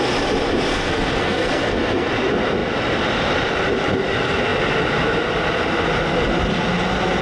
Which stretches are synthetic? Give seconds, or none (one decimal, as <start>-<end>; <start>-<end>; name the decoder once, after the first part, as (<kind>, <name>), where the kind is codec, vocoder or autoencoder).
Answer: 0.7-2.1 (codec, SNAC)